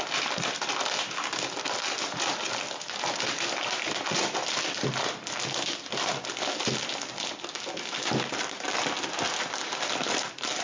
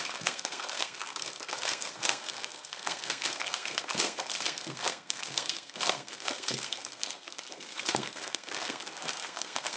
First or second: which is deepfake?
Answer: second